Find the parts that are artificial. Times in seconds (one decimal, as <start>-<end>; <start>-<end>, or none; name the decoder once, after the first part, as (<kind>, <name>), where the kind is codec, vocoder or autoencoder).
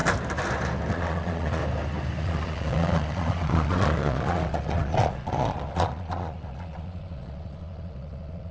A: 0.9-1.6 (vocoder, Vocos); 2.2-8.5